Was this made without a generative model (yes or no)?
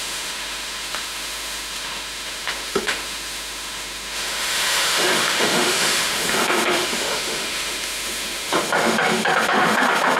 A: no